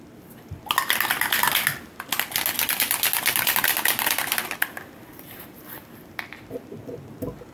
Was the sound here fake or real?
real